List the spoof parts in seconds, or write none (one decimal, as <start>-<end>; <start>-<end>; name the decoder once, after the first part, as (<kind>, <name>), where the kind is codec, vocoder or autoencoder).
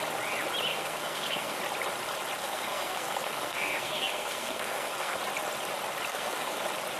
0.7-1.6 (codec, SNAC); 2.4-5.2; 6.1-6.6